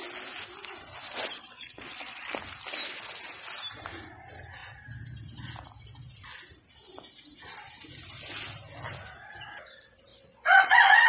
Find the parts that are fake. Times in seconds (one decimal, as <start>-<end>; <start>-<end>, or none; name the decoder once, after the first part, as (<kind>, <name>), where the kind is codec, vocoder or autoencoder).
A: 1.4-2.3 (vocoder, Vocos); 10.1-11.1